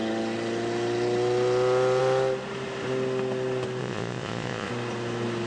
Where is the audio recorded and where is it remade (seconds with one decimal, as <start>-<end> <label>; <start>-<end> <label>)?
0.0-3.8 recorded; 3.8-4.7 remade; 4.7-5.5 recorded